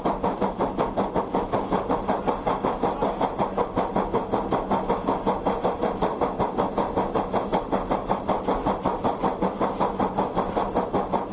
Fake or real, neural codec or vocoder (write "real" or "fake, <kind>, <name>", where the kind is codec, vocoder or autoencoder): real